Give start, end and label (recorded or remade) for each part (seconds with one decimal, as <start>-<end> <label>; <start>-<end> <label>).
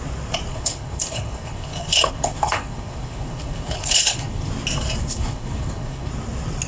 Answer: 0.0-0.5 recorded; 0.5-4.5 remade; 4.5-5.0 recorded; 5.0-6.1 remade; 6.1-6.7 recorded